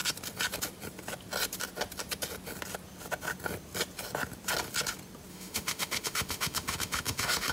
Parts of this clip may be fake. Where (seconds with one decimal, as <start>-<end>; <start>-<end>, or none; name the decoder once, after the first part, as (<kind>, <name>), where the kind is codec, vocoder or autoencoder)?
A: 5.3-7.5 (autoencoder, DAC-VAE)